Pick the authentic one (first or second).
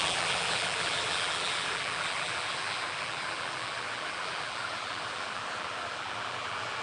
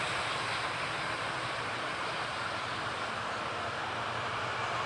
second